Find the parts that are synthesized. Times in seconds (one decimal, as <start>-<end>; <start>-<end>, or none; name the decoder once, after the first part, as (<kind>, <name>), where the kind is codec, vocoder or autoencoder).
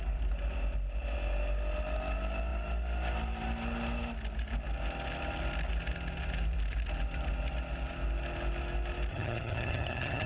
9.1-10.3 (vocoder, HiFi-GAN)